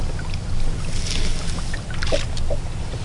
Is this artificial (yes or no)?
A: no